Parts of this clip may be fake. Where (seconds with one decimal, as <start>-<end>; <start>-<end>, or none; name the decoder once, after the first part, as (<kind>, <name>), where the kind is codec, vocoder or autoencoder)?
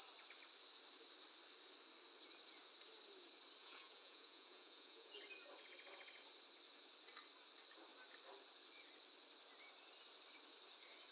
3.6-5.2 (vocoder, Vocos)